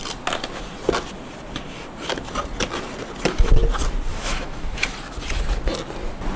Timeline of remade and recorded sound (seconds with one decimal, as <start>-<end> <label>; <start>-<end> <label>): 0.0-4.1 recorded; 4.1-4.8 remade; 4.8-6.4 recorded